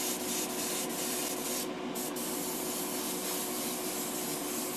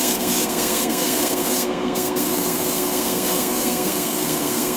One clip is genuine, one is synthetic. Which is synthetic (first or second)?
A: second